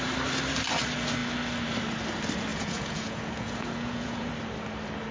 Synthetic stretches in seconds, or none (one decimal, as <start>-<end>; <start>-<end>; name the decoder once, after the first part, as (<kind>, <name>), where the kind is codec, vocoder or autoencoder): 2.5-4.3 (vocoder, Vocos)